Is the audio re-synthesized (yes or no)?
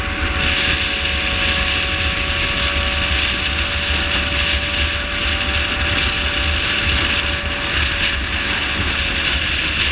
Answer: no